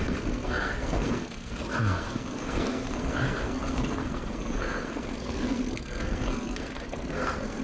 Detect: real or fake fake